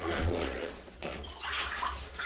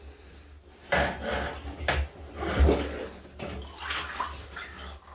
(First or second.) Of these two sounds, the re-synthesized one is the first